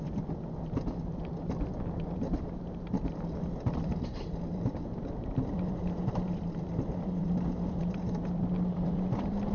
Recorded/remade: remade